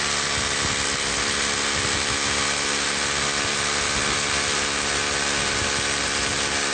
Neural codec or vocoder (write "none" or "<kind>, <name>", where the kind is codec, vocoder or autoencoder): none